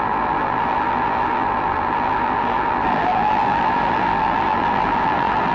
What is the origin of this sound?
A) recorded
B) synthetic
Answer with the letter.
B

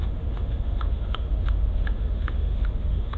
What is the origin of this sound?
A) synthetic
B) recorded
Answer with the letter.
A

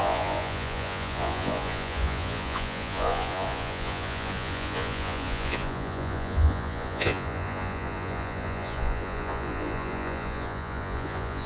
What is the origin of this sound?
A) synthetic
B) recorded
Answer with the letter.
A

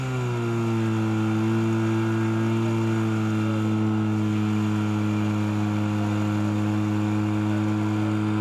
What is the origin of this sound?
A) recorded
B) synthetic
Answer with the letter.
A